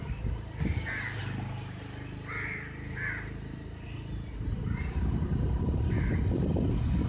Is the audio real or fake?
real